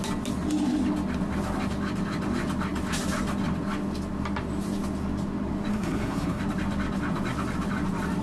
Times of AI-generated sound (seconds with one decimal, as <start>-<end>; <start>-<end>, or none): 5.7-6.4